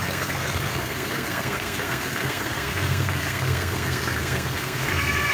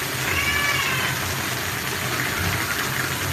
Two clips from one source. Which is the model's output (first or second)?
first